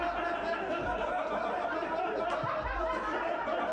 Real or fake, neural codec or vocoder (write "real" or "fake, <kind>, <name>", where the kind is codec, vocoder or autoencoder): real